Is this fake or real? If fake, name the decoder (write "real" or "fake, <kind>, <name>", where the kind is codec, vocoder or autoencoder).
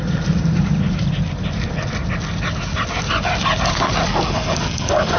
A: real